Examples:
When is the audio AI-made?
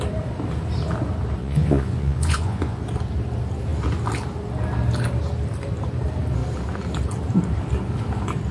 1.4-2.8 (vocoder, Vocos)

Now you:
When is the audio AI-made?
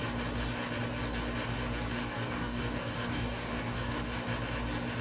2.0-4.0 (codec, DAC)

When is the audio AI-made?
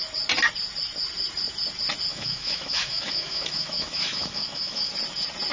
2.1-4.9 (autoencoder, DAC-VAE)